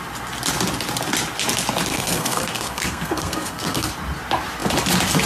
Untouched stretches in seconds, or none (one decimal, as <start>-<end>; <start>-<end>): 0.0-1.9; 3.9-5.3

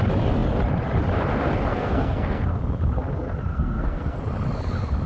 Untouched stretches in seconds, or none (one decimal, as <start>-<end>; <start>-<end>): 0.0-1.7; 2.6-3.5; 4.2-5.1

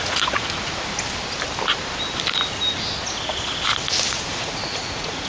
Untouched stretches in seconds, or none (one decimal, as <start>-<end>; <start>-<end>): 0.9-4.1

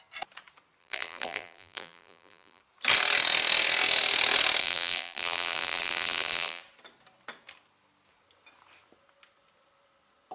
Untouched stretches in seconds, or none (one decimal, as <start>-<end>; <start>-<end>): 0.0-0.8; 2.6-4.6; 6.6-10.3

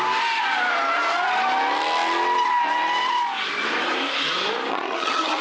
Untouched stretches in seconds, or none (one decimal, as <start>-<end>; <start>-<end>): 0.0-4.7